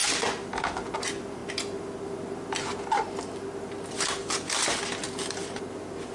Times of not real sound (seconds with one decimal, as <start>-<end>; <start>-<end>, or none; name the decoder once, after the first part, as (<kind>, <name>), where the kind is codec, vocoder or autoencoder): none